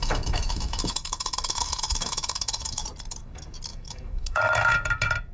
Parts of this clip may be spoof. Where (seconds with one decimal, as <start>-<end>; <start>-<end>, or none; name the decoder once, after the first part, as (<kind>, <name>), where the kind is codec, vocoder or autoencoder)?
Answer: 0.0-2.8 (autoencoder, DAC-VAE); 3.7-4.4